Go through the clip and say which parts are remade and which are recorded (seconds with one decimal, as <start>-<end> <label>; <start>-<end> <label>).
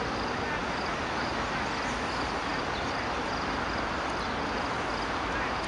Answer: 0.0-5.7 recorded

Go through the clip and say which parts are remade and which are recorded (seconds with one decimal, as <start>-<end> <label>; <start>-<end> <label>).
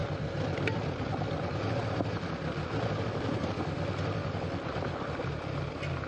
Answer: 0.0-6.1 recorded